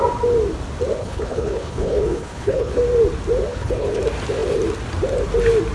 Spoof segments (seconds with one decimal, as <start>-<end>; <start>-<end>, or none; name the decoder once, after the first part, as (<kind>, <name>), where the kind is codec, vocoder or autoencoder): 1.0-2.8 (codec, HILCodec); 3.5-4.0